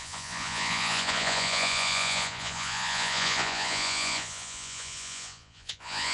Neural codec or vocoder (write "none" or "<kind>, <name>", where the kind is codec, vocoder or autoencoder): vocoder, Vocos